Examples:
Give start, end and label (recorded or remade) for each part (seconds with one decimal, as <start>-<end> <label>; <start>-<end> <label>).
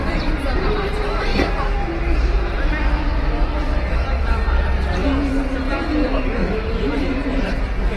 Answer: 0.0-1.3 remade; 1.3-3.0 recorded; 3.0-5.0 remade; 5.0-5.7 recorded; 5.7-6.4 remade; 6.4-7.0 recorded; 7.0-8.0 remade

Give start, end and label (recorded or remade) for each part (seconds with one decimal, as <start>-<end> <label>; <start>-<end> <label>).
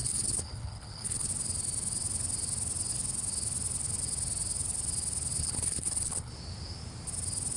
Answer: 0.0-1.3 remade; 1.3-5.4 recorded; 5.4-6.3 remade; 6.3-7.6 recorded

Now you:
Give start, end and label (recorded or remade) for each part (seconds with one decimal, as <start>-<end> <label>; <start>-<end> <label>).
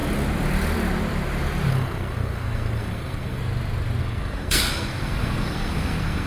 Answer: 0.0-1.7 recorded; 1.7-3.4 remade; 3.4-4.0 recorded; 4.0-6.3 remade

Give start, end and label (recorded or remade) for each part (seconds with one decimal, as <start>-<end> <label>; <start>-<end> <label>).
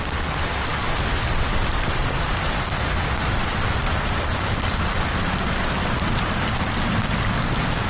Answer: 0.0-0.7 recorded; 0.7-5.2 remade; 5.2-7.9 recorded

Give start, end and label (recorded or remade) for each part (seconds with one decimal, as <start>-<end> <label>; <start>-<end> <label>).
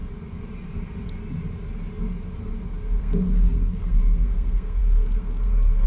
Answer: 0.0-3.0 recorded; 3.0-5.9 remade